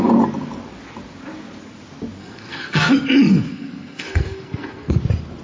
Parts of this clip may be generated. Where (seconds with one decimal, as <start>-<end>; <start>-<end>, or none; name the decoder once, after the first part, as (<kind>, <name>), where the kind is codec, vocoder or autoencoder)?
2.2-2.9 (codec, SNAC); 3.3-4.9